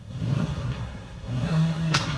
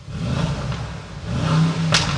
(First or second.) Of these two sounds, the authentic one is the second